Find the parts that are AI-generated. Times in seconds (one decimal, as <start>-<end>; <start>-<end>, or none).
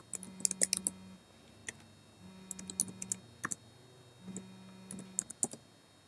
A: none